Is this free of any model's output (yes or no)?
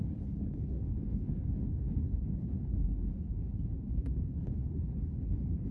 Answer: no